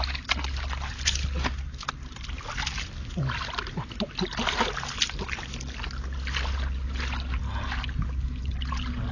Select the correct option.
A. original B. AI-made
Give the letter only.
A